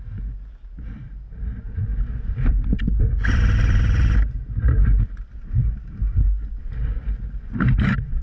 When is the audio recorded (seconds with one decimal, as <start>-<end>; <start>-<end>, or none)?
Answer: 6.6-7.6